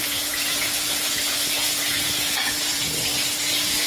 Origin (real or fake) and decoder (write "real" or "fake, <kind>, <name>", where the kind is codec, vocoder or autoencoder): fake, vocoder, Vocos